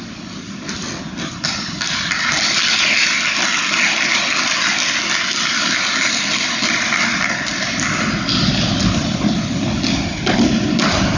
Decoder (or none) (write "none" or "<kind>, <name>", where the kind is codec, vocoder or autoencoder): none